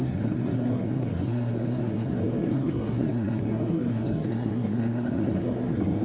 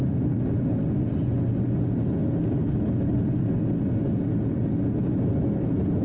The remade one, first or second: first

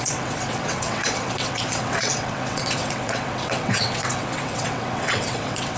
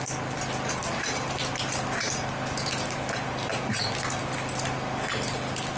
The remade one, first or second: first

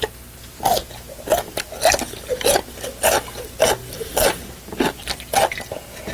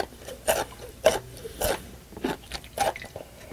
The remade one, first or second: second